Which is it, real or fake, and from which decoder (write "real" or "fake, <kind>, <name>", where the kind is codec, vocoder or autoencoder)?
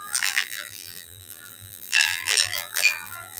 fake, vocoder, BigVGAN v2